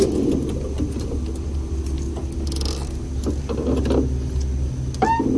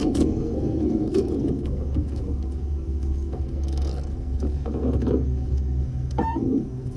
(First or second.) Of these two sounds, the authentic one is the first